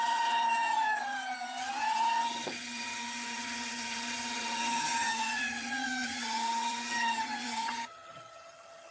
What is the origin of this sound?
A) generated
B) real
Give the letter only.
A